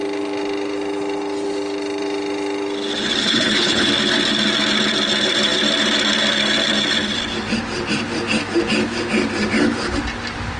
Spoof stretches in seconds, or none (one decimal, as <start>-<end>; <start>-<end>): 3.2-3.9